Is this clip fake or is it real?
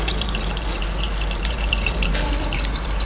fake